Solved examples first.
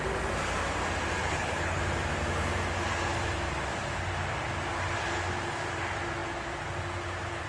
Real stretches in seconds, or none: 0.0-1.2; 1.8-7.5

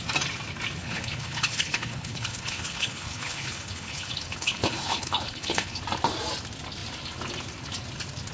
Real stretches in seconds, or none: 0.0-0.8; 5.8-8.3

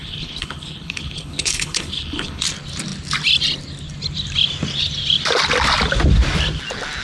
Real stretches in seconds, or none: 2.4-7.0

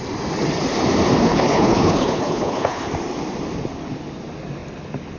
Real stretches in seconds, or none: 0.0-1.2; 2.9-5.2

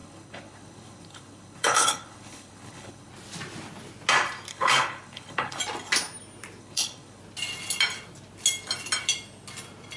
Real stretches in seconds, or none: 3.1-4.5; 5.6-6.6; 7.2-10.0